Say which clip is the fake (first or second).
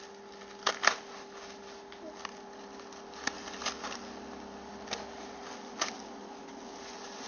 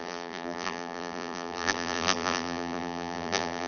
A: second